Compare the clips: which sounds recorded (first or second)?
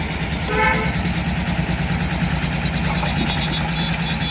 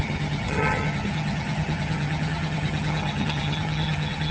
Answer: first